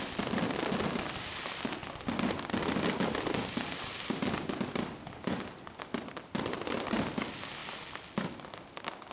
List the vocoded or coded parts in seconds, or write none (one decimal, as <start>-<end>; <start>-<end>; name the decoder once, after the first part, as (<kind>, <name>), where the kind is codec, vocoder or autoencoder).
none